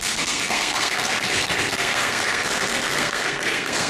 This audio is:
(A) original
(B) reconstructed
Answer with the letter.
B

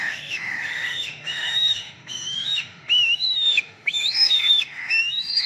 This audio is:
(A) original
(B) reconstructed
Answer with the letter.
B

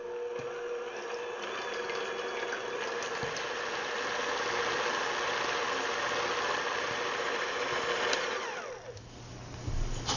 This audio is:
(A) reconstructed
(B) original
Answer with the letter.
B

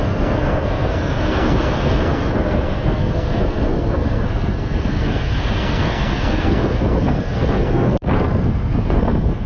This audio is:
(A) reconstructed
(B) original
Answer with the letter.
A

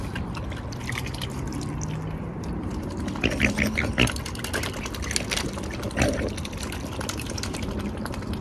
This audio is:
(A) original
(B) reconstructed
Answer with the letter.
A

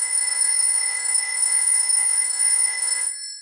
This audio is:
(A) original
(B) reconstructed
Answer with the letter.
B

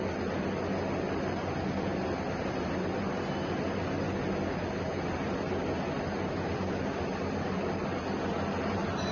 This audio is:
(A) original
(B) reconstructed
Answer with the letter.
A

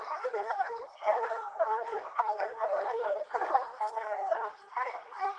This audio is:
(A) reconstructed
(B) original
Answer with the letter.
A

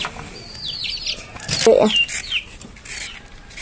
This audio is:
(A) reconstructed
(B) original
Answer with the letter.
B